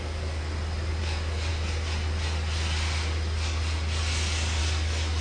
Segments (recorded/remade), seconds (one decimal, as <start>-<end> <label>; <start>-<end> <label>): 0.0-0.4 remade; 0.4-1.0 recorded; 1.0-1.5 remade; 1.5-4.6 recorded; 4.6-5.2 remade